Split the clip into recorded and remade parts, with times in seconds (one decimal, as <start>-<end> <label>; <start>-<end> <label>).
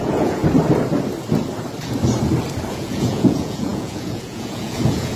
0.0-0.4 remade; 0.4-2.7 recorded; 2.7-5.2 remade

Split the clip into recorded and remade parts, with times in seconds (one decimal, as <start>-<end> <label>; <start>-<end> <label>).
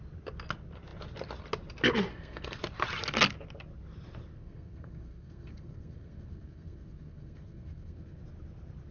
0.0-2.1 recorded; 2.1-2.6 remade; 2.6-4.3 recorded; 4.3-8.2 remade; 8.2-8.9 recorded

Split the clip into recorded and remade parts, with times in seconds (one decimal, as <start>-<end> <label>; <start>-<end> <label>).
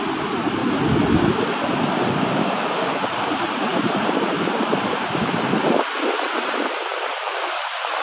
0.0-0.6 remade; 0.6-3.0 recorded; 3.0-8.0 remade